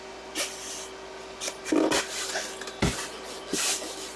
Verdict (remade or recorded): recorded